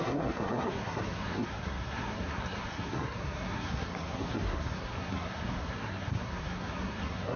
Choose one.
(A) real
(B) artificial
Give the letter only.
B